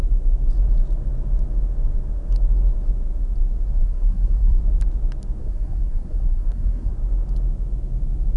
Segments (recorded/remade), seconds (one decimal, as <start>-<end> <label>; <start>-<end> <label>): 0.0-3.8 recorded; 3.8-4.6 remade; 4.6-5.4 recorded; 5.4-6.9 remade; 6.9-8.4 recorded